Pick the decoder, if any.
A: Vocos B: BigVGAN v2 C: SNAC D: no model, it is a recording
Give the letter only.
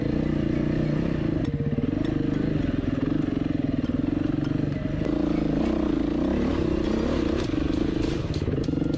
D